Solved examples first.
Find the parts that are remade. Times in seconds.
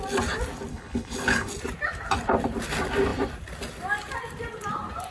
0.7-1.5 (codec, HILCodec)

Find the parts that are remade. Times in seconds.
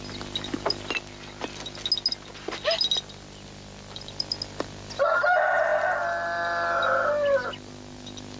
none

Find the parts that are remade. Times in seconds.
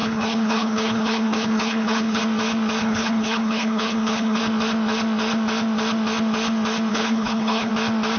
0.0-2.2 (codec, HILCodec); 2.8-4.4; 6.9-7.7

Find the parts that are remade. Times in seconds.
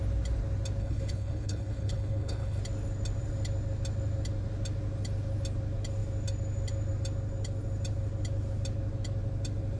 0.8-2.6 (codec, HILCodec)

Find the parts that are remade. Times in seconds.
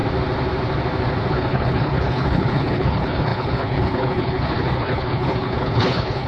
1.3-6.3 (codec, HILCodec)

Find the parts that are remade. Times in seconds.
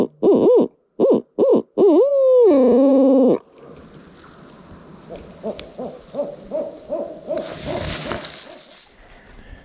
none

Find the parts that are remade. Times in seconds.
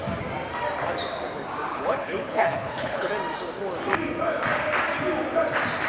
1.7-3.1 (codec, HILCodec)